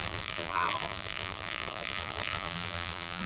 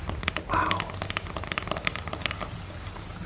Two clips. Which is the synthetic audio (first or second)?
first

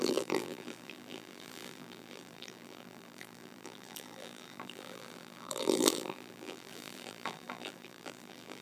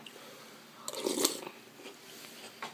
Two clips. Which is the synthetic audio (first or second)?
first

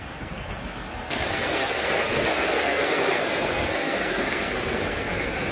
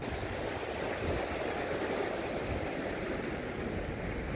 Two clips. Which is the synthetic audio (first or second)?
first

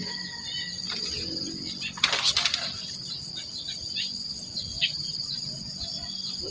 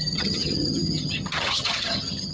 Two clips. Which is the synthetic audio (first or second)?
second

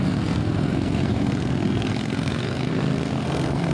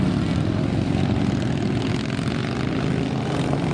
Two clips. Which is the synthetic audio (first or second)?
first